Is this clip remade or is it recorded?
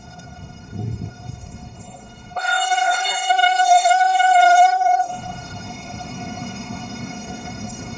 remade